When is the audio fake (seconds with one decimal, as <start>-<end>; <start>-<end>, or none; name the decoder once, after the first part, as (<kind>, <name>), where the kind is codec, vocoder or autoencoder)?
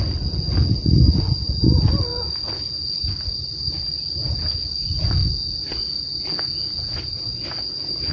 none